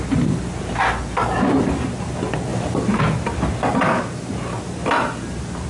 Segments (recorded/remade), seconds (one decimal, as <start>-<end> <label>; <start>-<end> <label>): 0.0-5.7 recorded

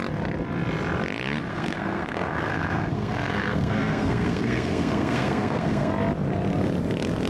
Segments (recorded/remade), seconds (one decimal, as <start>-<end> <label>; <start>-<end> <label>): 0.0-1.5 recorded; 1.5-5.9 remade; 5.9-7.3 recorded